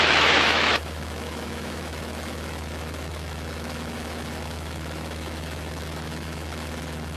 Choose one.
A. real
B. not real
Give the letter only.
B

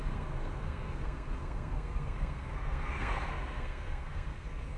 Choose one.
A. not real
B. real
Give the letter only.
A